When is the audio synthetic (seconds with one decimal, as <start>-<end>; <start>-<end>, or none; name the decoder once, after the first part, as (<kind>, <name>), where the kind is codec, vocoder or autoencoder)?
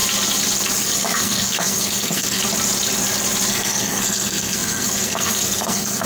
0.8-2.4 (codec, SNAC); 3.5-6.1